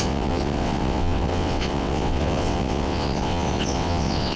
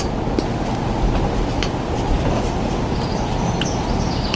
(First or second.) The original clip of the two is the second